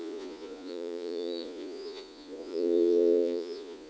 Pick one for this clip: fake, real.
fake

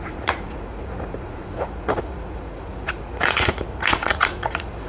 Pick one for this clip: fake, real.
fake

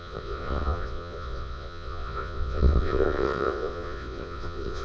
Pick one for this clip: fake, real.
fake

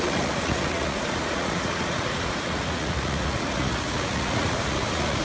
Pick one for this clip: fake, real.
fake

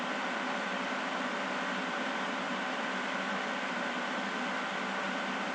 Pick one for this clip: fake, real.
real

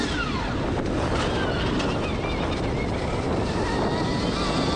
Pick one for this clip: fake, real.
real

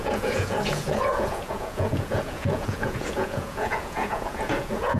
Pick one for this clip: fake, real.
fake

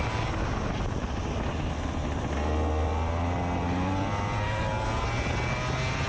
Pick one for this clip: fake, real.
real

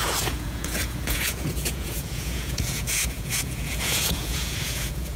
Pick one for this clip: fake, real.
fake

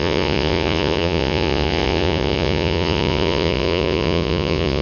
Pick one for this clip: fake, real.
fake